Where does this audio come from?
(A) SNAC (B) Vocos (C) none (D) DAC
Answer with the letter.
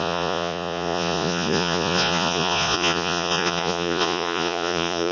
B